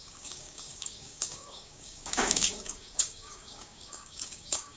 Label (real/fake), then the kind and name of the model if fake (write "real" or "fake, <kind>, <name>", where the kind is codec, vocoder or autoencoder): fake, codec, DAC